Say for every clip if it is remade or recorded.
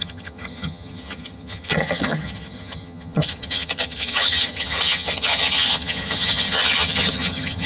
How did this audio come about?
remade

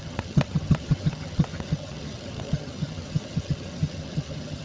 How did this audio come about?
remade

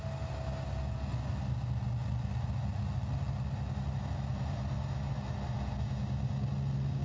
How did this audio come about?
recorded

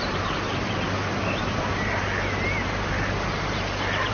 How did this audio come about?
recorded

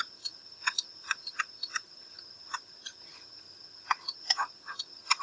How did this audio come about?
remade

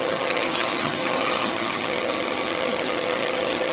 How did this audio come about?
remade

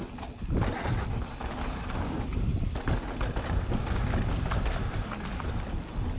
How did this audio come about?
recorded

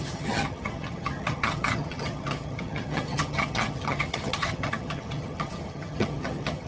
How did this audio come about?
remade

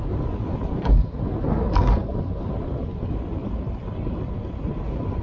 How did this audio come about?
recorded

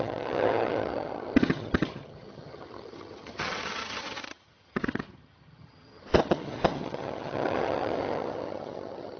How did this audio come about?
remade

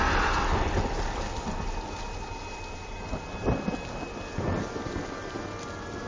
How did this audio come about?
recorded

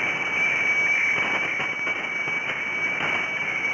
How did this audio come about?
recorded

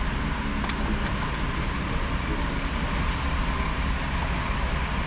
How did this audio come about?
recorded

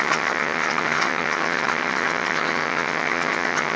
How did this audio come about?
remade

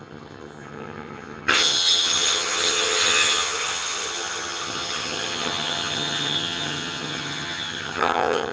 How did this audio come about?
remade